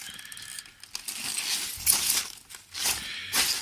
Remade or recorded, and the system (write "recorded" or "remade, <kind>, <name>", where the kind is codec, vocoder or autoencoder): recorded